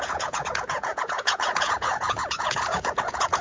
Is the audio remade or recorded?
remade